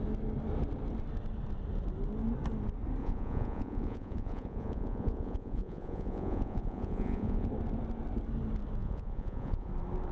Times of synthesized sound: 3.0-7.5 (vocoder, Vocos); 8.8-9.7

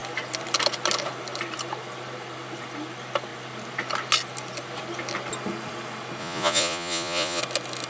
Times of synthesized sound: 6.2-7.4 (vocoder, Vocos)

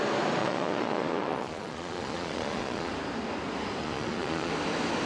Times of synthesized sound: 0.4-2.9 (vocoder, Vocos); 3.8-4.5

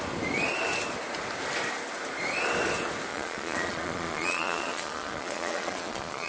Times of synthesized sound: 3.1-6.3 (vocoder, Vocos)

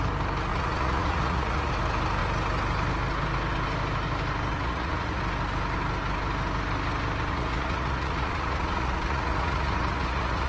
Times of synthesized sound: 0.5-1.7 (vocoder, Vocos); 4.5-5.2; 7.3-10.5

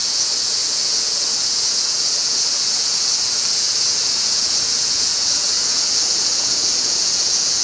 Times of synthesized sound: 0.0-7.6 (vocoder, Vocos)